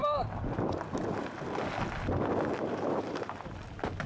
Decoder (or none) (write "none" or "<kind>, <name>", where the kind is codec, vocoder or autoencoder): none